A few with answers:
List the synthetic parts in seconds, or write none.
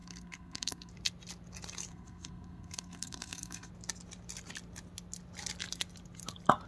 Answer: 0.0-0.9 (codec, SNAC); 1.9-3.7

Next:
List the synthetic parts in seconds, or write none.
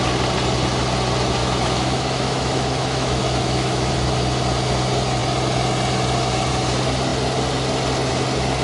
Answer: 1.4-3.9 (autoencoder, DAC-VAE)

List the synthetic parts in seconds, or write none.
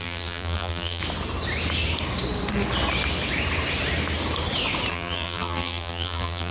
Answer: 0.0-1.0 (vocoder, BigVGAN v2); 4.9-6.5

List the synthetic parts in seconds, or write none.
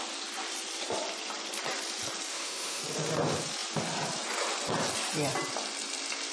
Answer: 2.3-2.8 (autoencoder, DAC-VAE)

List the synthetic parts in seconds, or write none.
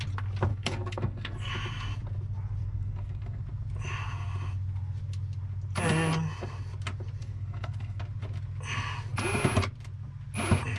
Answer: 0.5-1.5 (codec, SNAC); 2.6-3.4; 7.2-8.0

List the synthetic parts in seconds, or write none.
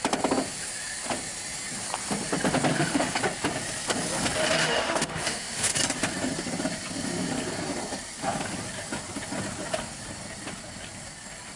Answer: 2.7-3.2 (autoencoder, DAC-VAE); 4.6-5.8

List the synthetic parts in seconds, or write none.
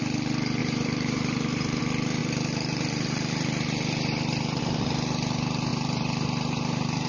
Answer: 0.6-1.8 (vocoder, BigVGAN v2); 2.2-4.6; 5.7-7.1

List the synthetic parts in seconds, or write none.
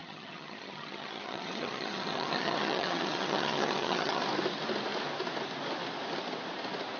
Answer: 0.0-4.2 (vocoder, HiFi-GAN)